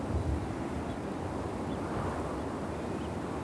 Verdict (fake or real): real